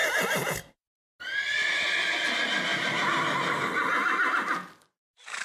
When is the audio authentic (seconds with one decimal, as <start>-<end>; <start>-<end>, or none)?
0.0-5.4